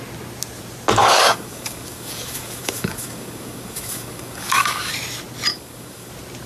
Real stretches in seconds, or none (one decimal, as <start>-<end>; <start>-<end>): 0.0-1.0; 4.9-5.5; 6.1-6.5